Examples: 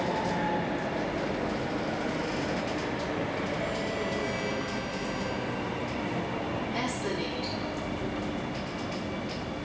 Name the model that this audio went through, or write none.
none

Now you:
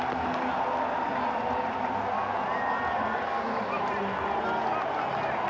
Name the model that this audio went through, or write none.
none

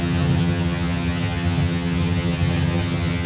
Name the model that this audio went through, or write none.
vocoder, HiFi-GAN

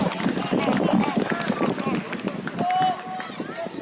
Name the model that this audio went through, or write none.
none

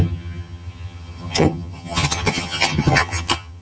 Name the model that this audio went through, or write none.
vocoder, HiFi-GAN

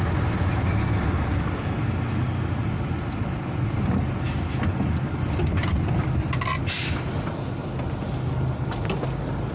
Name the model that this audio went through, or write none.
none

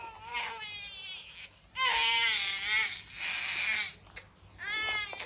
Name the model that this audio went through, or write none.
none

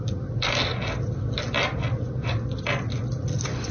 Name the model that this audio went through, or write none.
none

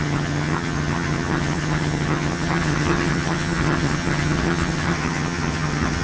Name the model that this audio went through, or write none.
vocoder, HiFi-GAN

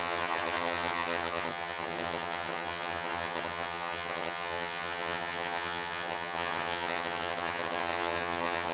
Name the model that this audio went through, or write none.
vocoder, HiFi-GAN